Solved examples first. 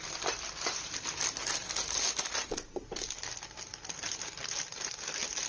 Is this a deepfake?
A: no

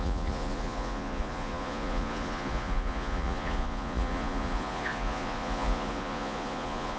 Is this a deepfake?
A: yes